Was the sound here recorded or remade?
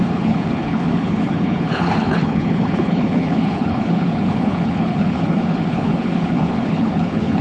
remade